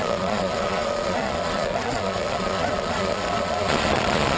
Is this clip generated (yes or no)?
yes